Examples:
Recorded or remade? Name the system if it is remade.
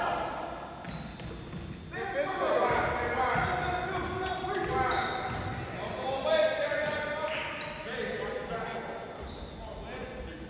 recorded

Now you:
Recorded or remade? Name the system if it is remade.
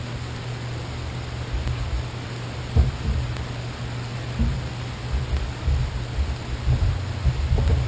recorded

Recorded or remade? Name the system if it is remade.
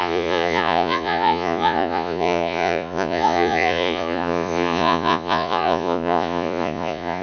remade, vocoder, Vocos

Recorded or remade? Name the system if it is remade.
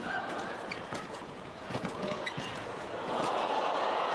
remade, vocoder, Vocos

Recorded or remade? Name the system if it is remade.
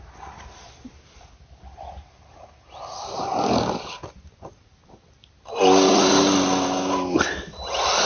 recorded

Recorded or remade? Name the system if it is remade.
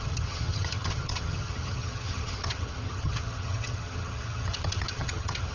remade, vocoder, HiFi-GAN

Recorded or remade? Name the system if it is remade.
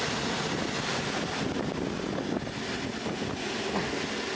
recorded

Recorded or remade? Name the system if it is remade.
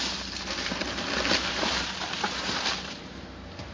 recorded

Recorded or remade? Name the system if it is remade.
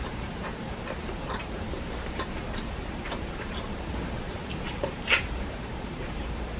remade, vocoder, BigVGAN v2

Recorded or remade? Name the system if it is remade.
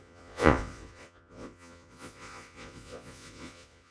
remade, vocoder, Vocos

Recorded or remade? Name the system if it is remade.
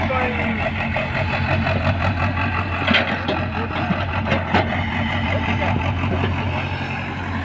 recorded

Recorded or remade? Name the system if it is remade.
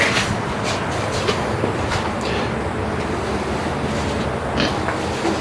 recorded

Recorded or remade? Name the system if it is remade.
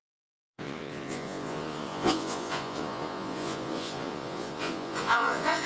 remade, vocoder, Vocos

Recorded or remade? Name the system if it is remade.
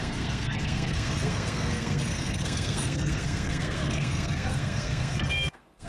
remade, codec, SNAC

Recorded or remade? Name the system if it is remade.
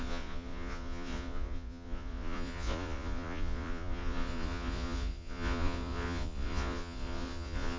remade, vocoder, Vocos